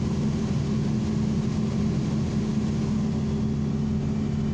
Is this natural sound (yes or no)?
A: yes